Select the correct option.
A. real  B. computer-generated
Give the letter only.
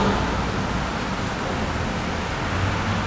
A